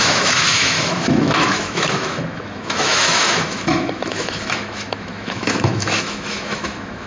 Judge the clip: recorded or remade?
remade